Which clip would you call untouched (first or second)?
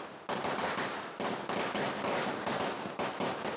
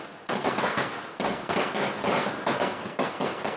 first